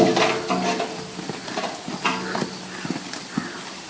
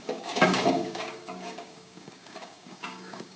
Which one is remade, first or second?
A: second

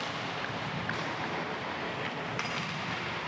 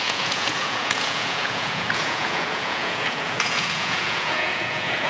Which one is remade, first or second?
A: second